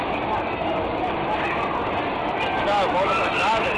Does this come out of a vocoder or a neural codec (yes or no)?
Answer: no